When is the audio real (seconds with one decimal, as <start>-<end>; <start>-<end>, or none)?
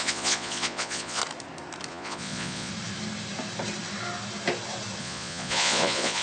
1.2-1.9; 2.7-5.0